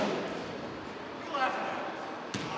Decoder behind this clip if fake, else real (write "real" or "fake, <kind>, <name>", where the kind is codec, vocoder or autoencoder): real